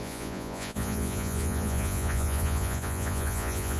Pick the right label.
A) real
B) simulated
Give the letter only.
B